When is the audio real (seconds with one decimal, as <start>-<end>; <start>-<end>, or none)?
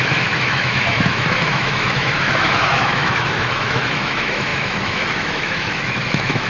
none